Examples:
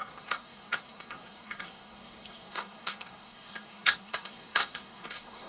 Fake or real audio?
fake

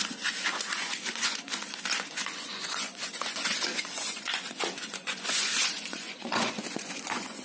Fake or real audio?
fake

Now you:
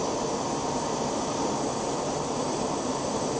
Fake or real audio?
fake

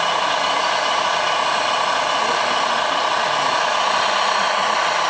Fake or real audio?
real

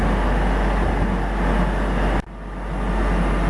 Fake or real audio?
real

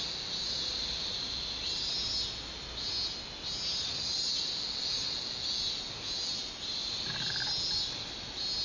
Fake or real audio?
real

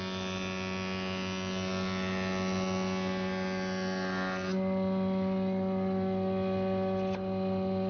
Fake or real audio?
real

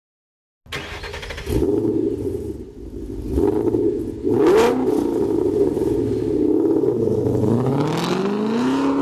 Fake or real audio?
real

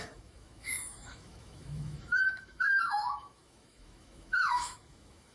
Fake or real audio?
fake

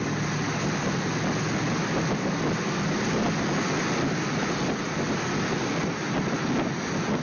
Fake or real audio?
real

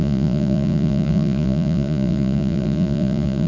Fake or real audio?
fake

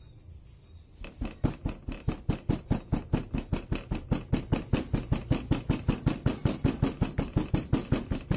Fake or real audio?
real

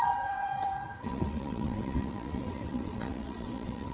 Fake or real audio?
fake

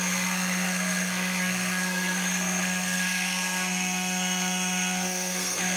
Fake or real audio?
fake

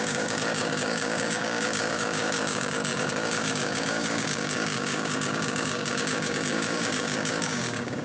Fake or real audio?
fake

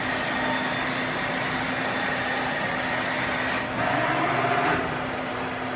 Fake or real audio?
real